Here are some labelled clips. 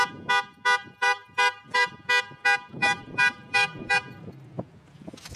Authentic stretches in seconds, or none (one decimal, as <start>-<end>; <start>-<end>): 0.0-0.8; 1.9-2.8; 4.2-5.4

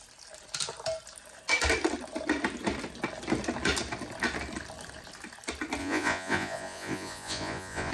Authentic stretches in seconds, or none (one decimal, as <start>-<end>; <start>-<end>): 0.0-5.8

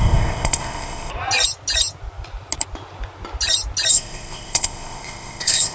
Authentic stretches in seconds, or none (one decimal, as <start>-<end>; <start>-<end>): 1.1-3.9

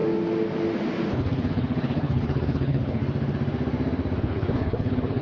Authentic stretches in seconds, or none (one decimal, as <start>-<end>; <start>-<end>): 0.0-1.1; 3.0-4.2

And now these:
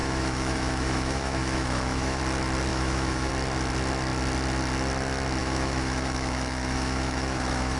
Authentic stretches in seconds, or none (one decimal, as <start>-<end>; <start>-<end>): 2.2-2.7; 3.3-5.4